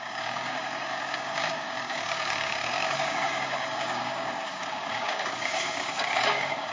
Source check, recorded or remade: remade